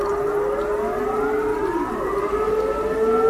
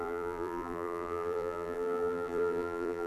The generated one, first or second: second